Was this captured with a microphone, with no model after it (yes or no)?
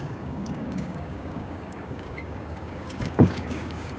no